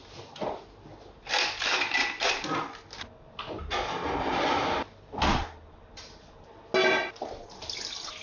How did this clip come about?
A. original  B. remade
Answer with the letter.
A